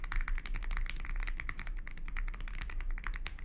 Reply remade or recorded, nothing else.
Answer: recorded